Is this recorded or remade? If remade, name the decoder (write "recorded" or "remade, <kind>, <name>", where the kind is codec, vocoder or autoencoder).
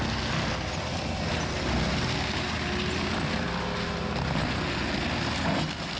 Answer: recorded